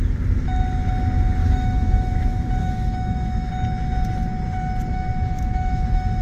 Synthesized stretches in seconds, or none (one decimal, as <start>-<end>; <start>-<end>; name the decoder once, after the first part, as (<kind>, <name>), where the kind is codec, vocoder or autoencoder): 1.4-2.1 (autoencoder, DAC-VAE); 2.6-3.5; 4.9-6.2